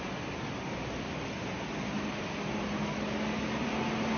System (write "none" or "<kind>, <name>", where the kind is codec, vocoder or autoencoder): none